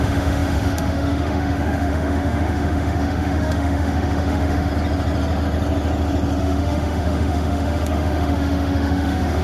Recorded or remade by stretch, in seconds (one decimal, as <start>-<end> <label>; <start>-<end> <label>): 0.0-4.7 remade; 4.7-6.4 recorded; 6.4-9.4 remade